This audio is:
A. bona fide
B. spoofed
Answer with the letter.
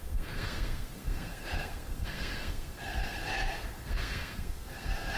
B